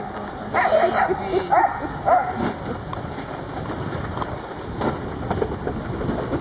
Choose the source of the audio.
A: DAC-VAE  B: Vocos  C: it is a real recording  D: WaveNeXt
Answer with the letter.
C